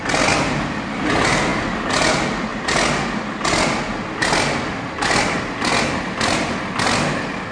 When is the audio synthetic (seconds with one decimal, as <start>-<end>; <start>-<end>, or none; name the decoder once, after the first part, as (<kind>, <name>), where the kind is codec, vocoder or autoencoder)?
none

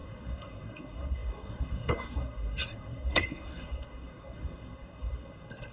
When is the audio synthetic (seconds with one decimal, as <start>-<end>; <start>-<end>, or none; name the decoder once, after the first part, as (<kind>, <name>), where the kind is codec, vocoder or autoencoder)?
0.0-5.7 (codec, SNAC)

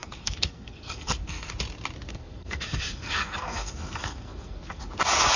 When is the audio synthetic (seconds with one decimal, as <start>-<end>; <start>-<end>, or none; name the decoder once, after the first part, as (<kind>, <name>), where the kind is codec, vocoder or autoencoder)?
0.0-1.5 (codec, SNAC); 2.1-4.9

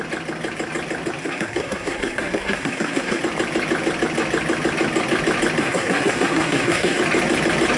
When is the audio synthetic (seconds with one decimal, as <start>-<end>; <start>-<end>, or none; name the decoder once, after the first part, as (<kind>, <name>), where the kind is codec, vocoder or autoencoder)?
1.2-3.2 (codec, SNAC); 5.6-7.0

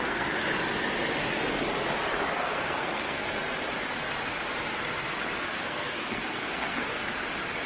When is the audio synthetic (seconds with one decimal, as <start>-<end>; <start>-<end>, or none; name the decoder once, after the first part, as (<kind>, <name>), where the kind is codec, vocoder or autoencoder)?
0.0-0.4 (codec, SNAC); 2.4-3.2; 5.5-7.0